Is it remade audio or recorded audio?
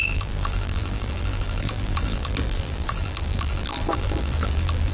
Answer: remade